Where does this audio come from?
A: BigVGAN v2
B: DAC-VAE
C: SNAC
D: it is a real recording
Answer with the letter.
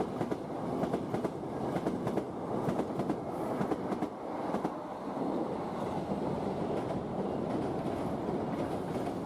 D